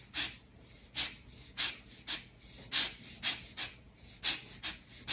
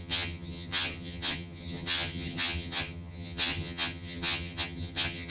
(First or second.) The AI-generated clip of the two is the second